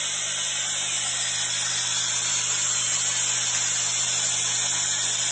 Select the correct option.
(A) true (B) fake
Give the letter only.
A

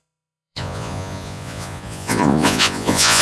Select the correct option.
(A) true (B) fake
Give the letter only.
B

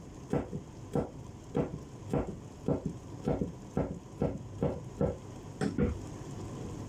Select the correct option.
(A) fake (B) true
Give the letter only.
B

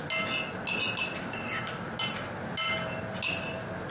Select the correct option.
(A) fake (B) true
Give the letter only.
B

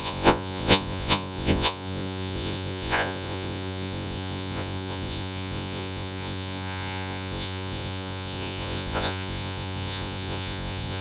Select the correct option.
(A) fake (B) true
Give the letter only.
A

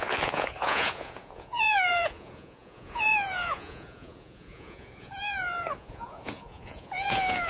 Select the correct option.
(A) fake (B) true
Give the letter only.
A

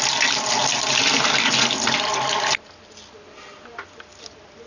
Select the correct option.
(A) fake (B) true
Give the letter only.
B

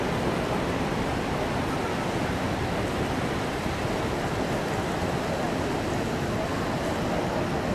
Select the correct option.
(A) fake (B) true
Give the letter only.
B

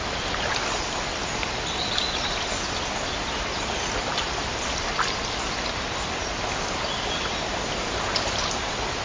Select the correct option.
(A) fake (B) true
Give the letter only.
B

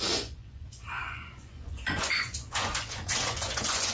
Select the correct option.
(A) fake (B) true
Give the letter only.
A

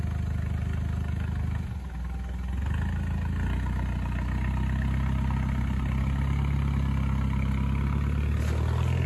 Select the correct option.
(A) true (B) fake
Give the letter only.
A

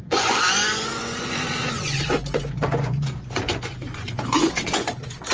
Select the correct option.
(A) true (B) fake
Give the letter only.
B